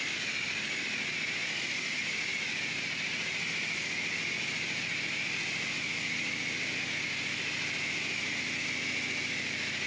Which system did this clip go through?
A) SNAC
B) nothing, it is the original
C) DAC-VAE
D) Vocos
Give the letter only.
B